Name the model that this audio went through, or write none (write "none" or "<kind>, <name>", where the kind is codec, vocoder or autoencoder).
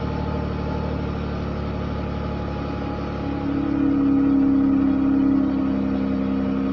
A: none